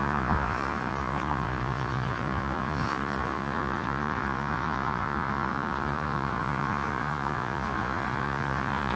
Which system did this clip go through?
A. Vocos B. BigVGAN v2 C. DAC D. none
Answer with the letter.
A